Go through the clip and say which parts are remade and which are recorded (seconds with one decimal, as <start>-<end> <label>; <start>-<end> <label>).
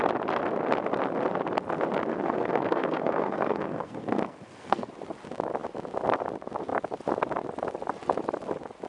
0.0-2.1 recorded; 2.1-4.9 remade; 4.9-8.9 recorded